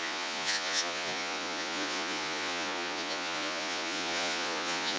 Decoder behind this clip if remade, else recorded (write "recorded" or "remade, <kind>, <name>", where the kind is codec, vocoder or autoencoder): remade, vocoder, Vocos